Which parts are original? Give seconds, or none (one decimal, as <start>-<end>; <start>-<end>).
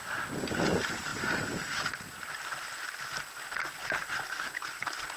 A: 0.0-1.1; 2.0-3.8; 4.8-5.2